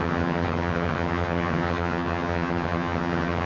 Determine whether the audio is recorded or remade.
remade